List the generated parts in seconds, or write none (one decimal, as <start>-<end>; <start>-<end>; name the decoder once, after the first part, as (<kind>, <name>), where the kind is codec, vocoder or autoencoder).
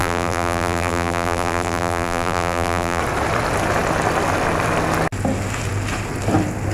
0.0-3.0 (vocoder, BigVGAN v2)